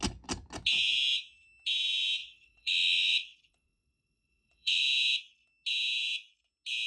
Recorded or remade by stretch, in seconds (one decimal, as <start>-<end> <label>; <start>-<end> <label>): 0.0-2.2 recorded; 2.2-4.8 remade; 4.8-6.9 recorded